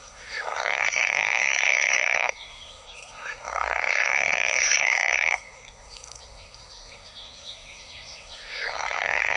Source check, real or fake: fake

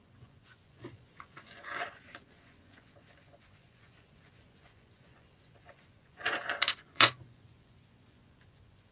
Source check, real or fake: fake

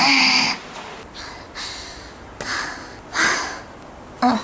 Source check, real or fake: real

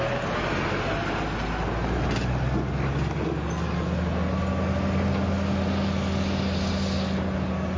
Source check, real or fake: real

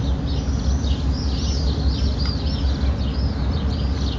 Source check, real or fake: real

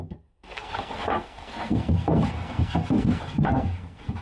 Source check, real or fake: fake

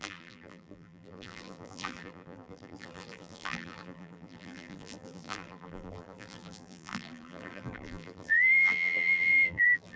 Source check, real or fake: fake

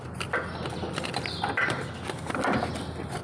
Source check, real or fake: real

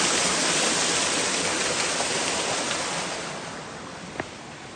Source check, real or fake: real